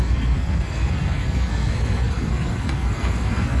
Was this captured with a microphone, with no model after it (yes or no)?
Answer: no